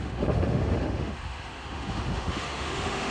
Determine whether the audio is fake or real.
fake